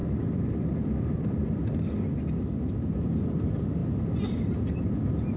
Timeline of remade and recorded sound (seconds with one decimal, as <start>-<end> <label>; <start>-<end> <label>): 0.0-5.4 remade